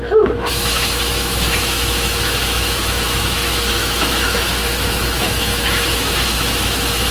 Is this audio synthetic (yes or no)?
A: yes